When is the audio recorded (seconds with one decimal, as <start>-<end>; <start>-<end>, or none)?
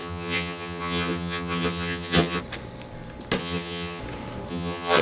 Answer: 2.4-3.4; 4.0-4.5